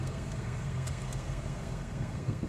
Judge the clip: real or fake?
fake